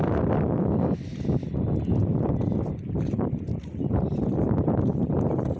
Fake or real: real